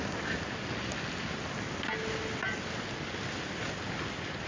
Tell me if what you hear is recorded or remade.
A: recorded